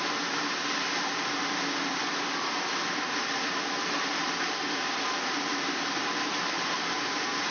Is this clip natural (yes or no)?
yes